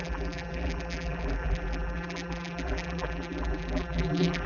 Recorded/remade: remade